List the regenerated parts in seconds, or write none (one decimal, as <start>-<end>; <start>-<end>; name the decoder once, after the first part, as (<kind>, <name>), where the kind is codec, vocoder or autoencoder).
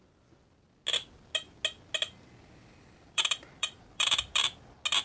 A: 2.6-4.6 (vocoder, BigVGAN v2)